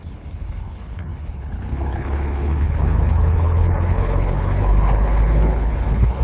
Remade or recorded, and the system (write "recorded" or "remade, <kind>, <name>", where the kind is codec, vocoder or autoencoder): remade, codec, HILCodec